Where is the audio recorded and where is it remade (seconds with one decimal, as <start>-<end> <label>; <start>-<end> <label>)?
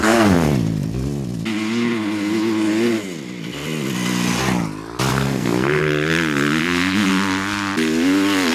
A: 0.0-0.5 remade; 0.5-5.1 recorded; 5.1-5.8 remade; 5.8-6.6 recorded; 6.6-7.1 remade; 7.1-8.5 recorded